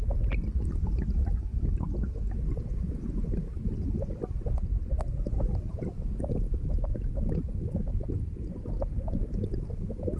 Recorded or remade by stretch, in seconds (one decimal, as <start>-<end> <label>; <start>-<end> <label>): 0.0-10.2 recorded